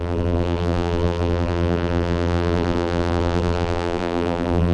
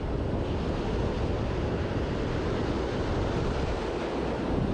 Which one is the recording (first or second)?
second